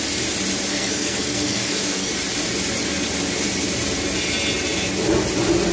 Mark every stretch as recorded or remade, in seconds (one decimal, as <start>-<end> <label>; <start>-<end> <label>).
0.0-0.7 recorded; 0.7-2.1 remade; 2.1-5.7 recorded